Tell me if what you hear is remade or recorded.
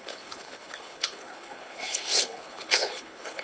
remade